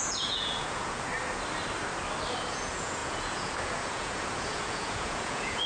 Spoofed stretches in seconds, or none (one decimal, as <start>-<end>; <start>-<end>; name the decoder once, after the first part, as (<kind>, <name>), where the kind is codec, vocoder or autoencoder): 0.0-1.1 (vocoder, Vocos); 2.4-5.7